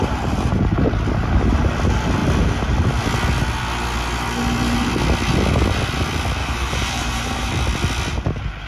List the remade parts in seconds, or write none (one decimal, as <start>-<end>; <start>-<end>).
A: 6.4-7.5